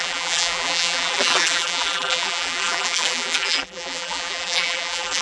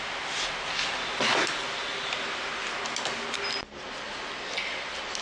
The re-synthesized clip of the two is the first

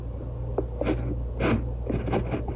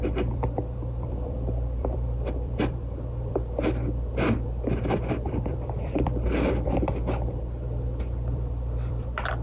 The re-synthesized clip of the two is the second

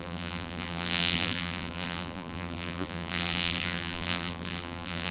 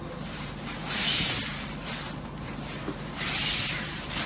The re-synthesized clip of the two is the first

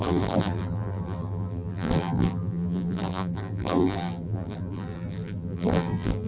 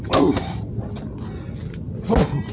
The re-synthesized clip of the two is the first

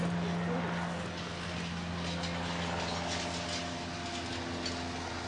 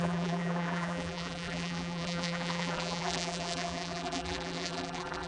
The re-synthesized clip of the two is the second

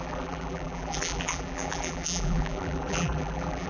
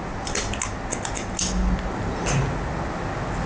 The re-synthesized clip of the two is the first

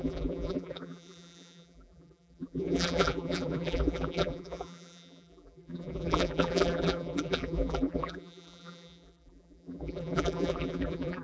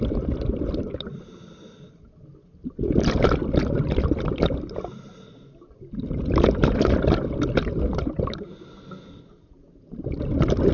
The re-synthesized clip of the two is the first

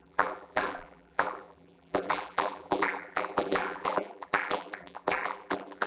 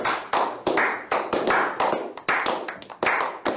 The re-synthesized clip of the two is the first